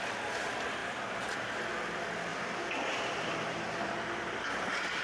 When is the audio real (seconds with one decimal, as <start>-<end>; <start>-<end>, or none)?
0.0-0.8; 1.6-2.3; 3.9-5.0